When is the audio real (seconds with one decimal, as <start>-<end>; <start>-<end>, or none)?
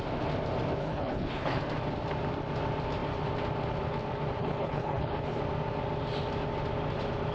0.0-0.8; 1.6-4.4; 5.4-7.3